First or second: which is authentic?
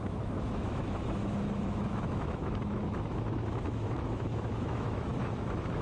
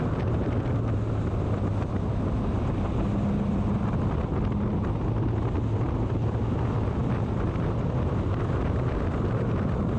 second